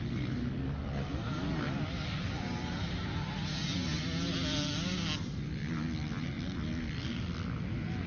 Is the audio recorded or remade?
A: recorded